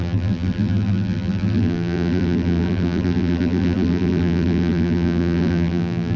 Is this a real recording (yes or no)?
no